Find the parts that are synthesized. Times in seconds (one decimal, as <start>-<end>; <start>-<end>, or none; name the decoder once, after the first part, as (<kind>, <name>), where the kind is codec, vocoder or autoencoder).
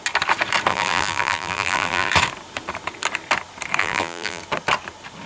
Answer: 0.7-2.1 (vocoder, BigVGAN v2); 3.8-4.4